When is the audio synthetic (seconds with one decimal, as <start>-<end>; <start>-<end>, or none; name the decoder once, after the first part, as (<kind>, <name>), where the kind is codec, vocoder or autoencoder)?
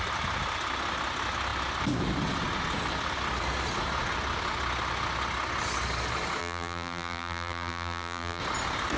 6.4-8.4 (vocoder, BigVGAN v2)